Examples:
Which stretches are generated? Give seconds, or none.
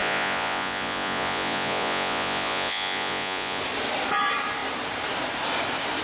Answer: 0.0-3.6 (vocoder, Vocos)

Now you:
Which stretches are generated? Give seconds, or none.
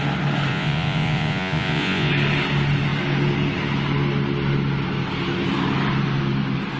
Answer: 0.5-2.1 (vocoder, Vocos)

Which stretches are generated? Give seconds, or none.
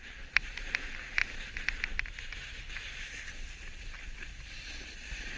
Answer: none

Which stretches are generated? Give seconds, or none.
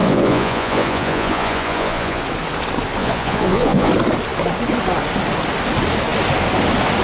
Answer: 0.0-2.2 (vocoder, Vocos); 3.0-3.9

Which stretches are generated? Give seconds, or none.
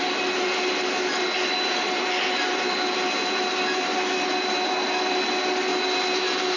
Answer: none